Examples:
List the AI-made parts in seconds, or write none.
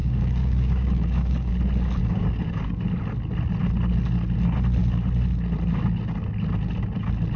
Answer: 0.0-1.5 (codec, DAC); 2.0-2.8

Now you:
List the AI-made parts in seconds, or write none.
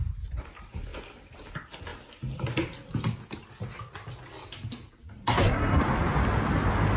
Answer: 5.3-5.8 (codec, SNAC)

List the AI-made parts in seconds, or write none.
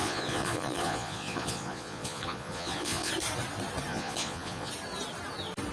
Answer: 0.0-3.1 (vocoder, Vocos); 3.9-4.7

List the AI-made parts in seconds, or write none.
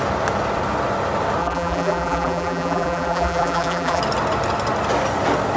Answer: 1.4-4.0 (vocoder, BigVGAN v2)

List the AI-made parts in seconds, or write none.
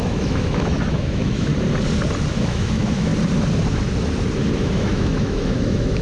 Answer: 0.0-1.5 (autoencoder, DAC-VAE); 2.3-3.1; 4.6-6.0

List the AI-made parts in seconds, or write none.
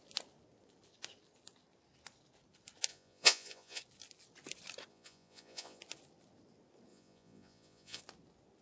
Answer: 2.9-3.8 (vocoder, Vocos); 4.9-5.8; 6.9-8.0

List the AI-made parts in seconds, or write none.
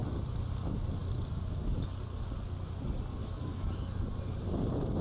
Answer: 3.2-3.7 (autoencoder, DAC-VAE)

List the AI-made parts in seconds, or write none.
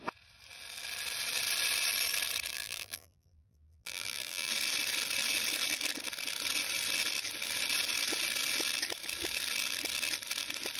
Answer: 2.5-4.5 (vocoder, BigVGAN v2)